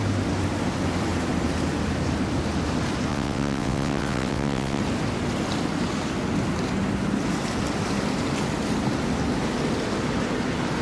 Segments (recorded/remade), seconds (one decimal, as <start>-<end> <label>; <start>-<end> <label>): 0.0-3.1 recorded; 3.1-4.8 remade; 4.8-10.8 recorded